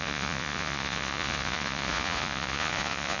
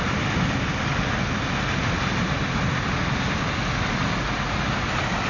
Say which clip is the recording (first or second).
second